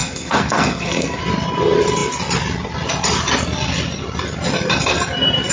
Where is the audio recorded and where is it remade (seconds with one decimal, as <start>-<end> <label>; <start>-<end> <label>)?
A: 0.0-1.2 remade; 1.2-5.5 recorded